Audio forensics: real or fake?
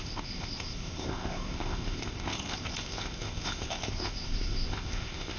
fake